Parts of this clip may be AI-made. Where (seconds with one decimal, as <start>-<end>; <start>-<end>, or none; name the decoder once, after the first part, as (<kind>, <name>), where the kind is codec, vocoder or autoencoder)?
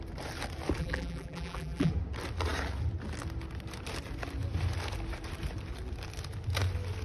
0.8-1.9 (vocoder, BigVGAN v2)